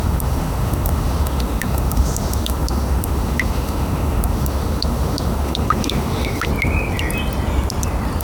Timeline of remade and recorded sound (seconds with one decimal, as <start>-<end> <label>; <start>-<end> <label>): 0.0-6.5 remade; 6.5-8.2 recorded